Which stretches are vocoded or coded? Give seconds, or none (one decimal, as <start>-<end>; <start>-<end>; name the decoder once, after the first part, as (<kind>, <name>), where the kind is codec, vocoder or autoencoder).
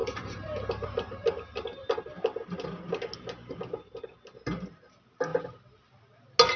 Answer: 0.0-0.7 (vocoder, BigVGAN v2)